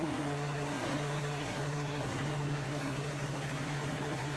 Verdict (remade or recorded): remade